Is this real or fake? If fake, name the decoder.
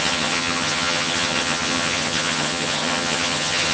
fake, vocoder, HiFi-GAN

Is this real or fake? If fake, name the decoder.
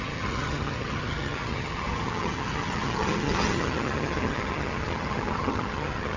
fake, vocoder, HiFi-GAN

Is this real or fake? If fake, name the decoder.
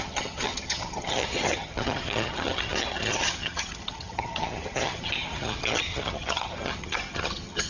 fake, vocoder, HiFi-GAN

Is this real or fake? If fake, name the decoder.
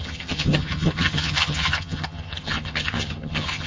fake, vocoder, HiFi-GAN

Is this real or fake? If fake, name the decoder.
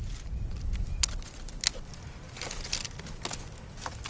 real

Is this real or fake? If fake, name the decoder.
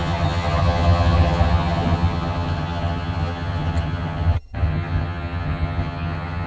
fake, vocoder, HiFi-GAN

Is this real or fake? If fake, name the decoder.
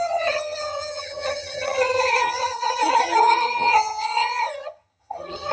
fake, vocoder, HiFi-GAN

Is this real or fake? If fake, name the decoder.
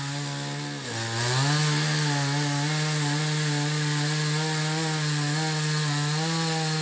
real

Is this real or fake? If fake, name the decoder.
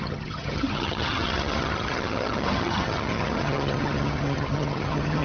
fake, vocoder, HiFi-GAN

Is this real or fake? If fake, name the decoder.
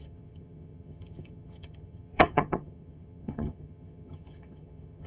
fake, vocoder, HiFi-GAN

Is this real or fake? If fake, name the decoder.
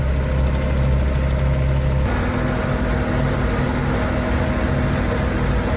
real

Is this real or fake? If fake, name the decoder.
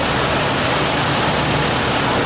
real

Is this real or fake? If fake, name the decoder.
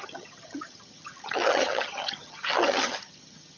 fake, vocoder, HiFi-GAN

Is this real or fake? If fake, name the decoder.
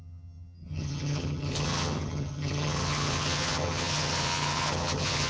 fake, vocoder, HiFi-GAN